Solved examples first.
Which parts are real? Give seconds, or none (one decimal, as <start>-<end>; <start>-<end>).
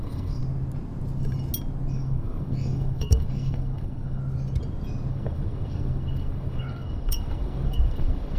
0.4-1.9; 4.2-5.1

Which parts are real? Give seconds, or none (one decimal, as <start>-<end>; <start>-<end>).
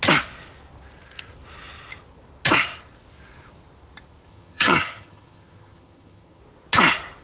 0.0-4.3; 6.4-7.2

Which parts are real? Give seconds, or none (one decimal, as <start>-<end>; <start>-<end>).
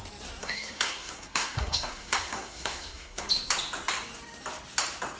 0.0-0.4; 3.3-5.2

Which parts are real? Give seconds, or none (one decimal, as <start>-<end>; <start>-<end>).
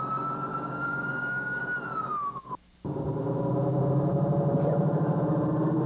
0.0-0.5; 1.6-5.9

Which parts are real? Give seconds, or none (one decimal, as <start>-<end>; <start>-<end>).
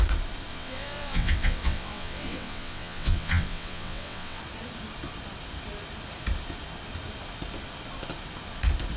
0.0-0.5; 4.4-9.0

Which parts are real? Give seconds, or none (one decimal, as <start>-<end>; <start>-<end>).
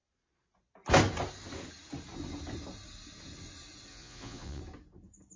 0.0-3.9; 4.6-5.4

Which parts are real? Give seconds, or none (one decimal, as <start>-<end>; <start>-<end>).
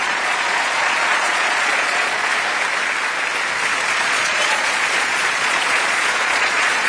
2.3-3.9